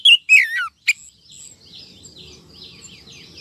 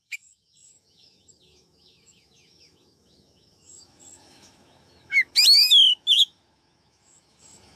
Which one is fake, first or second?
second